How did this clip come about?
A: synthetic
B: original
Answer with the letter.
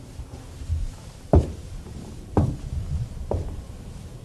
A